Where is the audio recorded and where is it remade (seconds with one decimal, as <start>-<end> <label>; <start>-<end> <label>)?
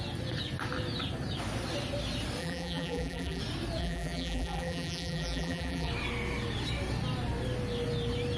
0.0-2.4 recorded; 2.4-3.4 remade; 3.4-3.8 recorded; 3.8-5.9 remade; 5.9-8.4 recorded